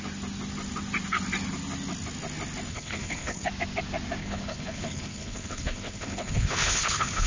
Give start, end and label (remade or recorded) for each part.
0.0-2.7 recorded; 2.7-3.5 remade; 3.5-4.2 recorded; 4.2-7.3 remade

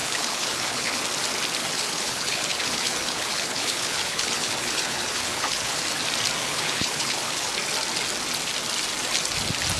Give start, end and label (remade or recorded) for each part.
0.0-1.0 remade; 1.0-1.6 recorded; 1.6-5.8 remade; 5.8-6.4 recorded; 6.4-7.5 remade; 7.5-9.8 recorded

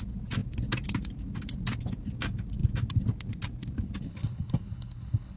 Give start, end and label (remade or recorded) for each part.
0.0-4.1 recorded; 4.1-5.4 remade

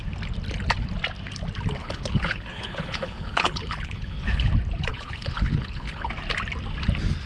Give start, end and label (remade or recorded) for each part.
0.0-1.8 recorded; 1.8-4.5 remade; 4.5-4.9 recorded; 4.9-6.1 remade; 6.1-7.3 recorded

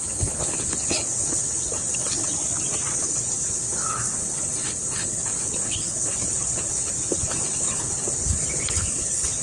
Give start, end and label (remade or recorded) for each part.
0.0-2.3 remade; 2.3-3.0 recorded; 3.0-9.4 remade